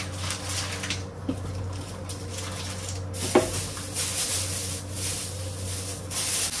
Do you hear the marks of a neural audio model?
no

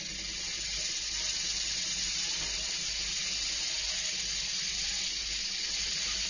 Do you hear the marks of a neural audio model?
no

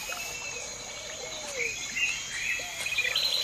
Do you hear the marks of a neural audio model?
no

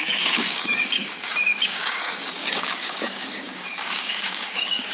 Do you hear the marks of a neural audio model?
yes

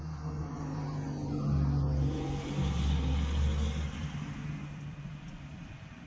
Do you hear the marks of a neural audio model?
no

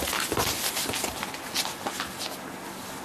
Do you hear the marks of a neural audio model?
no